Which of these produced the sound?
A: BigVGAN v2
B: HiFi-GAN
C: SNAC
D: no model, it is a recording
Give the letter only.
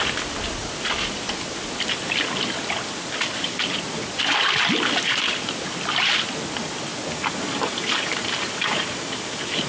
D